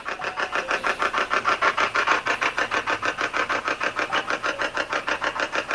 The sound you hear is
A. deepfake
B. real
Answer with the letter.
B